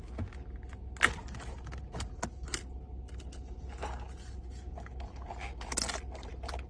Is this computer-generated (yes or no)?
no